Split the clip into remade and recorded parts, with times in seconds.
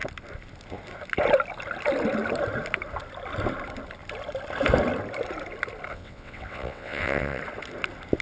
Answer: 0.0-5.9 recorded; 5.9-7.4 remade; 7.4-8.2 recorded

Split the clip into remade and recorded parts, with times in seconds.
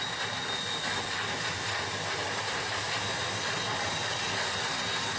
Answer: 0.0-5.2 recorded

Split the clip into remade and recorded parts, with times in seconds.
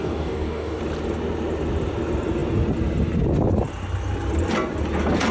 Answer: 0.0-0.8 remade; 0.8-5.3 recorded